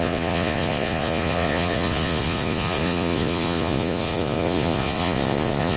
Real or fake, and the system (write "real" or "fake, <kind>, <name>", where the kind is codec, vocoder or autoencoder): fake, vocoder, Vocos